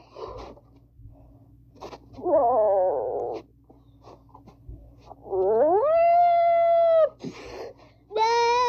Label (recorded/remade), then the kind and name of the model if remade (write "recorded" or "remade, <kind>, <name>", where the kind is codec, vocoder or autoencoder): recorded